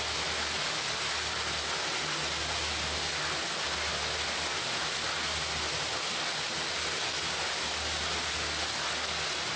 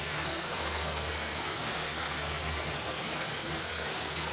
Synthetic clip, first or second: second